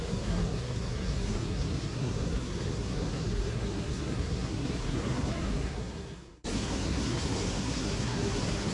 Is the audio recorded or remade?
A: remade